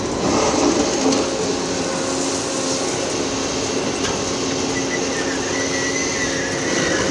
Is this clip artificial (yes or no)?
no